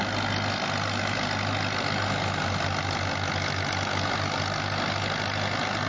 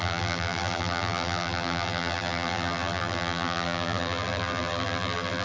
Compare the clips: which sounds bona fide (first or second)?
first